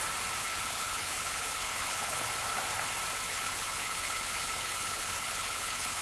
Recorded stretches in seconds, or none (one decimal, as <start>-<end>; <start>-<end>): 0.0-0.4; 2.3-3.3